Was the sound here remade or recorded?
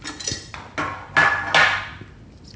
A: recorded